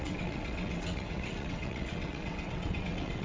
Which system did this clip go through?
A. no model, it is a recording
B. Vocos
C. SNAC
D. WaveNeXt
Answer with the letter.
D